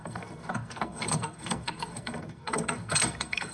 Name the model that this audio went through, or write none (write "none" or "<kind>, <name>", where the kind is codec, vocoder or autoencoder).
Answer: codec, SNAC